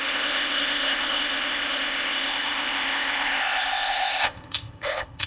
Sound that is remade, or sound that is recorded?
remade